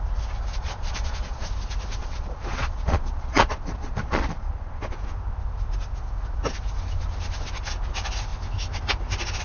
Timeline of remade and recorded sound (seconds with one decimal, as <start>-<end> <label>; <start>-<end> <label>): 0.0-0.5 recorded; 0.5-1.4 remade; 1.4-2.0 recorded; 2.0-4.9 remade; 4.9-9.4 recorded